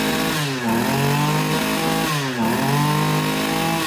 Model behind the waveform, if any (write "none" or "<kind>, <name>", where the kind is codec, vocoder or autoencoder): none